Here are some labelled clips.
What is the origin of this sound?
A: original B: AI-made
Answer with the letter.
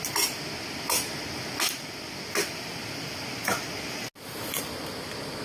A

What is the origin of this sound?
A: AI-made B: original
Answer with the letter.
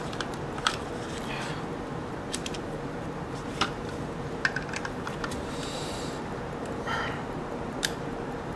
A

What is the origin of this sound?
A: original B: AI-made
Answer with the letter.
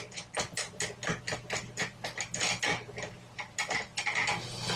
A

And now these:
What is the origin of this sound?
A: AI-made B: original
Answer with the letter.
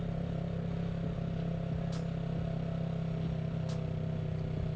B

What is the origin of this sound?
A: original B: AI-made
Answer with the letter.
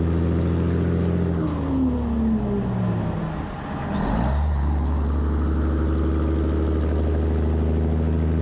A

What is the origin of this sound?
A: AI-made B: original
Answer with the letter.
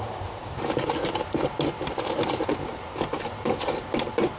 A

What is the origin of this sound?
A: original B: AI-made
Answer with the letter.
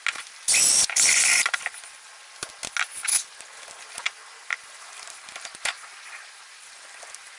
A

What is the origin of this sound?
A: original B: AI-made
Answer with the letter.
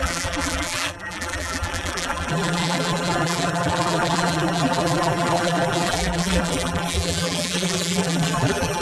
B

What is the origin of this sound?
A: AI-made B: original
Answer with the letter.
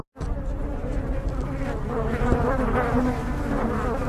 B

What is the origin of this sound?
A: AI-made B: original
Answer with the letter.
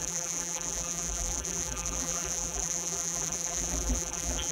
A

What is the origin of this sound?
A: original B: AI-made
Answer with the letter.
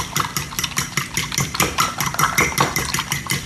B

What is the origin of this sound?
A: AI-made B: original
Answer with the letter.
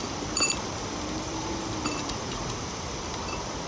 A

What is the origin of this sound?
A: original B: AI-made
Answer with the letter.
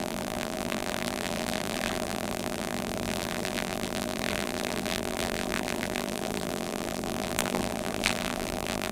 B